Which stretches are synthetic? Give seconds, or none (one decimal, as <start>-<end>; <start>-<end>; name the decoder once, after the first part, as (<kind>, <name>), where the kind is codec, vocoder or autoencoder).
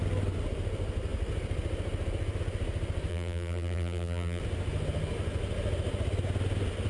3.1-4.4 (vocoder, BigVGAN v2)